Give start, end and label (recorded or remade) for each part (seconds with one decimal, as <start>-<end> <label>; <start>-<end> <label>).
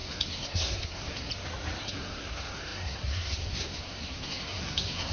0.0-1.3 remade; 1.3-1.8 recorded; 1.8-5.1 remade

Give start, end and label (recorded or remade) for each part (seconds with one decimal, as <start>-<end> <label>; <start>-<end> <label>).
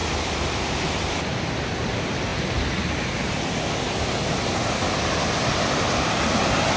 0.0-6.8 recorded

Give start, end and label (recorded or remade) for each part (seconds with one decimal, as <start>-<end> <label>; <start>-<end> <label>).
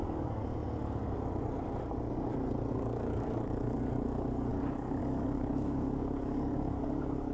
0.0-0.4 remade; 0.4-2.7 recorded; 2.7-7.3 remade